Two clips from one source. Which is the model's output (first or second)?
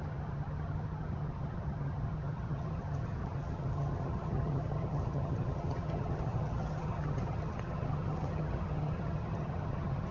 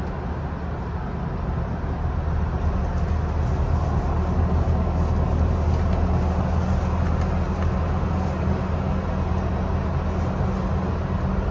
first